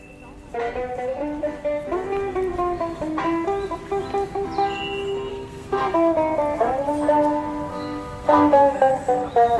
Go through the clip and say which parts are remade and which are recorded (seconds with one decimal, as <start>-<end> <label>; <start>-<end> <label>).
0.0-5.3 recorded; 5.3-5.8 remade; 5.8-7.7 recorded; 7.7-8.9 remade; 8.9-9.6 recorded